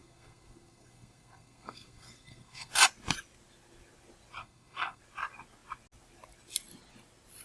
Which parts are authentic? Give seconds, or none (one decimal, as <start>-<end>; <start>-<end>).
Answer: 2.7-4.4; 5.0-7.4